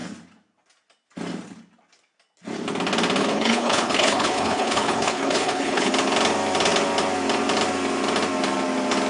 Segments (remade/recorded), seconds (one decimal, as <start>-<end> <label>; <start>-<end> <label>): 0.0-3.2 recorded; 3.2-5.9 remade; 5.9-9.1 recorded